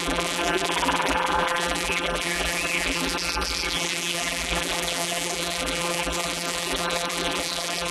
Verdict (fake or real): fake